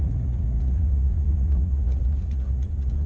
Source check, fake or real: fake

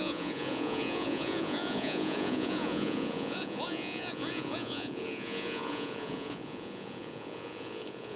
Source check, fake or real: fake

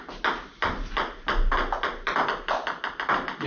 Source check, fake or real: real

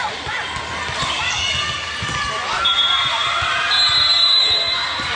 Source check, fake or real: real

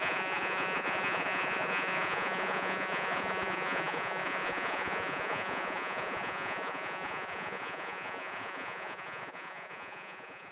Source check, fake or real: fake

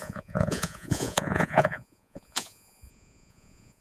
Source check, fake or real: fake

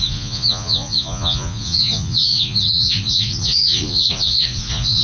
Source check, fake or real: fake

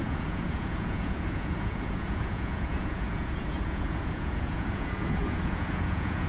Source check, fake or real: fake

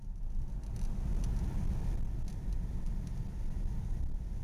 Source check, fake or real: real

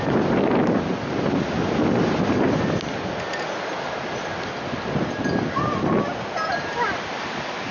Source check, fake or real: real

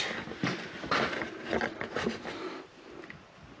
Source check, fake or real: real